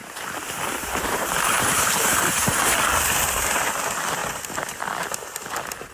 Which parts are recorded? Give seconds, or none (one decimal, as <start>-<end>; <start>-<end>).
3.5-5.9